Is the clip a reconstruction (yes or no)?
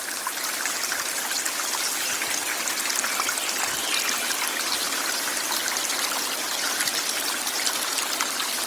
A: no